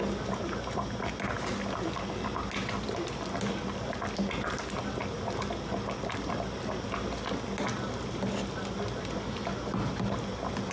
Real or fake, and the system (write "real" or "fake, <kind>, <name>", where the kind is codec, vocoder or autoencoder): real